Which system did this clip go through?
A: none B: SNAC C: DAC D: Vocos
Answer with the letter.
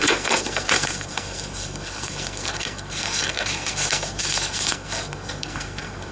B